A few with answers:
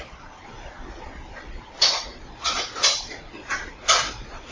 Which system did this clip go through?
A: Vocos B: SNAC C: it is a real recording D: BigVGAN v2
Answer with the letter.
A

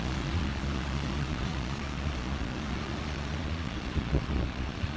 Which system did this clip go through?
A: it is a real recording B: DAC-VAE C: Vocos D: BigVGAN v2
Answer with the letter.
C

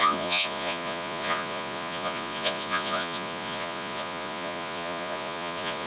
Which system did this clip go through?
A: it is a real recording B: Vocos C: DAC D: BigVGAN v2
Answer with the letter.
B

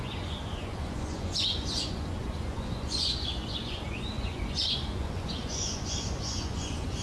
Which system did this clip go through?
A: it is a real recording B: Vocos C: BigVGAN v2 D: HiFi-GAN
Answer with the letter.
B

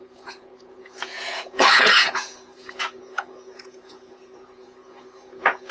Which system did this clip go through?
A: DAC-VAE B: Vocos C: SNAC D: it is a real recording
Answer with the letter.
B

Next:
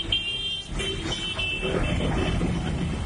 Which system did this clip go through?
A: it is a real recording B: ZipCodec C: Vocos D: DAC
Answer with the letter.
A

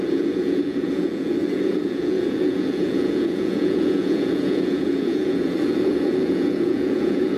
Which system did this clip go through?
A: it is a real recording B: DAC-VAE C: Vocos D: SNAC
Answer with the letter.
C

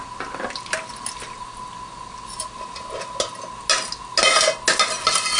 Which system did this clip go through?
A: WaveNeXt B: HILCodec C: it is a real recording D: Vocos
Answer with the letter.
C